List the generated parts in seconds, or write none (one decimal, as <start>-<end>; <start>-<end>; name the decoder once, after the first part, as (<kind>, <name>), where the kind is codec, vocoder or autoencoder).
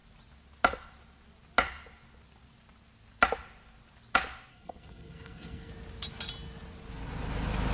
4.5-5.7 (codec, SNAC)